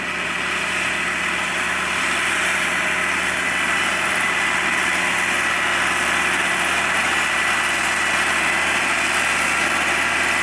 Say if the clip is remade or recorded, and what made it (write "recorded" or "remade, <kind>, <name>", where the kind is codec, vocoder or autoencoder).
recorded